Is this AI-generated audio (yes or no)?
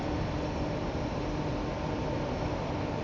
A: no